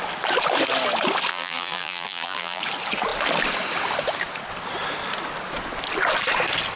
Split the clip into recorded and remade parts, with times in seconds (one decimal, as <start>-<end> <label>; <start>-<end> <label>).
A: 0.0-1.3 recorded; 1.3-2.6 remade; 2.6-6.8 recorded